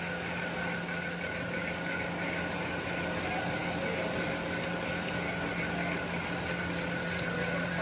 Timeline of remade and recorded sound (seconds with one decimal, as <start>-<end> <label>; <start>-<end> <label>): 0.0-7.8 recorded